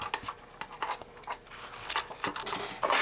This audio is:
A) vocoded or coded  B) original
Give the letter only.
B